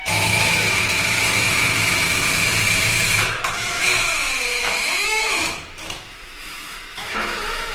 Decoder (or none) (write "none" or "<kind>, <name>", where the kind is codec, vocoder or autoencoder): autoencoder, DAC-VAE